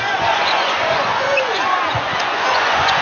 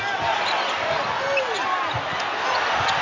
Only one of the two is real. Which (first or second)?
second